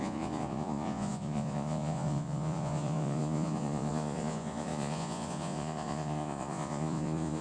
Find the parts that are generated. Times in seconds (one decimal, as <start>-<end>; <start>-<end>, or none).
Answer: 0.0-7.4